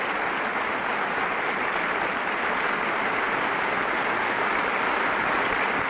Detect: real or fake real